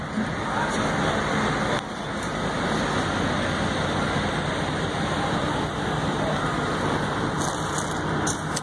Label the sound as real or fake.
real